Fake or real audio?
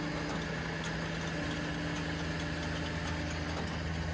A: real